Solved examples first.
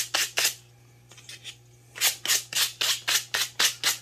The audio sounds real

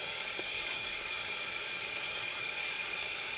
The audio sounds fake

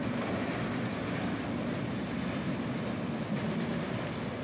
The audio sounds real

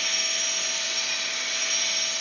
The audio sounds real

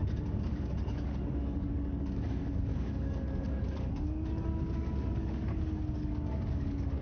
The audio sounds fake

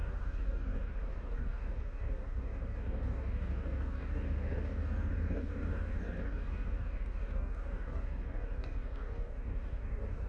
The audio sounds fake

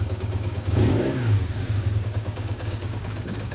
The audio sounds fake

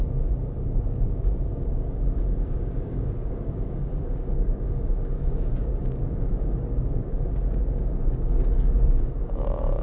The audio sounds fake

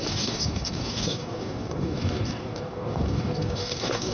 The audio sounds fake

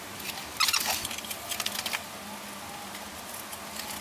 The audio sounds real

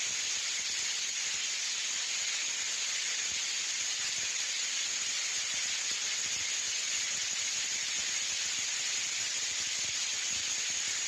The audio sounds real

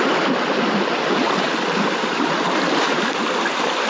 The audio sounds real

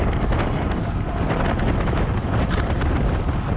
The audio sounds real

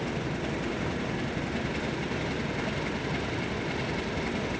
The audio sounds real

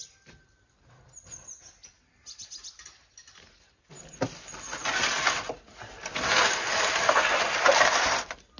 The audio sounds real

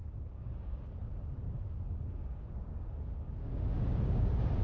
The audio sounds fake